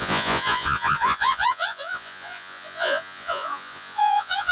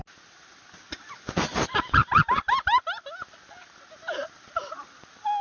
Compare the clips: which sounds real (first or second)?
second